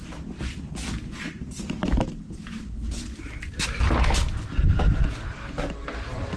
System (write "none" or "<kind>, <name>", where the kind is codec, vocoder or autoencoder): none